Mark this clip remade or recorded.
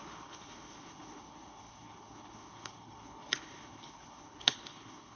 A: remade